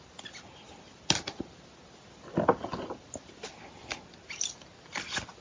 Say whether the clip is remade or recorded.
recorded